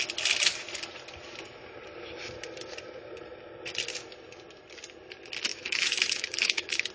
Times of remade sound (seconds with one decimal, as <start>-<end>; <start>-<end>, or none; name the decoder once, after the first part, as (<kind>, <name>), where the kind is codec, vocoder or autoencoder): 5.5-6.9 (autoencoder, DAC-VAE)